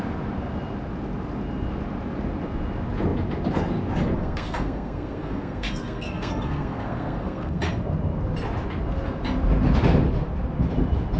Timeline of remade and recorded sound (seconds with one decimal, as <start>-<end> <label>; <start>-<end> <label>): 0.0-4.2 recorded; 4.2-7.6 remade; 7.6-11.2 recorded